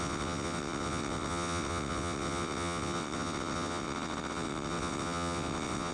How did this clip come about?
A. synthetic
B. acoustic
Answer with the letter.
A